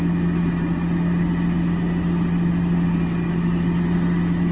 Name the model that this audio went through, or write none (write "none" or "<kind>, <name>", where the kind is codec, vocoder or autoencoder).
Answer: none